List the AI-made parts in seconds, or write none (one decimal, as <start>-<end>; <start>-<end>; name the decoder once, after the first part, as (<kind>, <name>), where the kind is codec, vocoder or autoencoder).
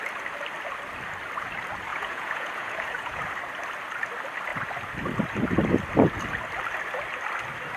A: 1.9-3.2 (vocoder, Vocos)